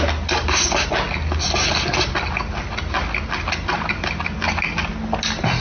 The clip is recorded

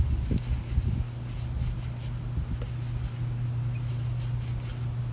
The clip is recorded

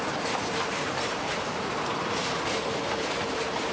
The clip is recorded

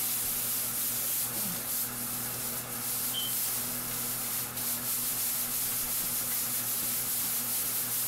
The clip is recorded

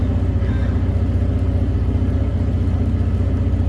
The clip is recorded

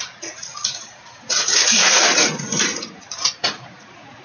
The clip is remade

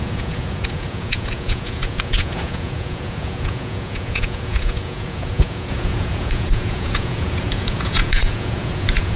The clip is remade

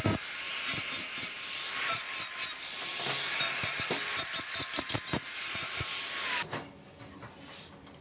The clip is recorded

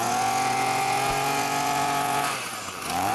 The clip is remade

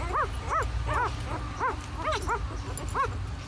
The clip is recorded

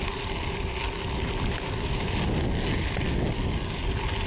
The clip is recorded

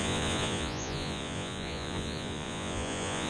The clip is remade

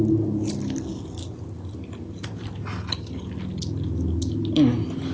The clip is recorded